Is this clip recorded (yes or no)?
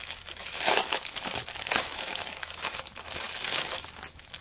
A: no